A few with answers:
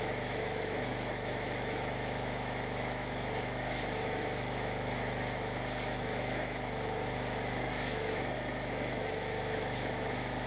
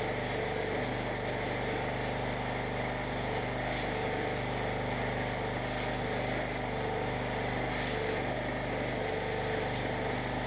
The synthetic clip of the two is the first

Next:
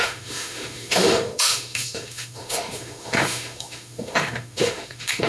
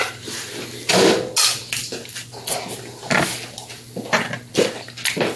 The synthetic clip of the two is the first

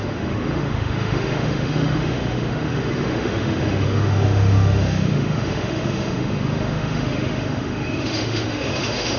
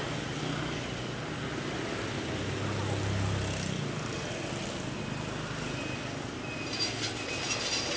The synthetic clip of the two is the first